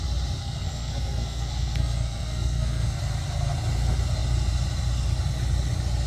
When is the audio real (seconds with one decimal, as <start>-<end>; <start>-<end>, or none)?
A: 0.0-0.4; 3.0-6.1